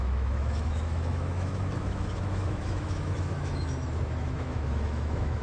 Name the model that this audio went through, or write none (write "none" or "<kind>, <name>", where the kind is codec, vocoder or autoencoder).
autoencoder, DAC-VAE